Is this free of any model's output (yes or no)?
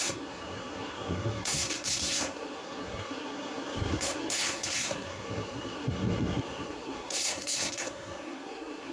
no